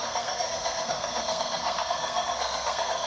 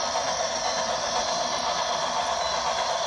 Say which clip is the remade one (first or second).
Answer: first